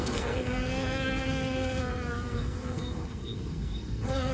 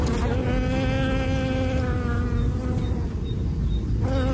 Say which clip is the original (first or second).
second